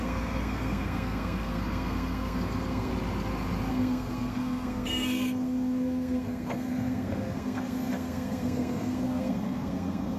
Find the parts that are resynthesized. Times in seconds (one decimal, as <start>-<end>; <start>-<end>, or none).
0.0-2.9; 3.7-10.2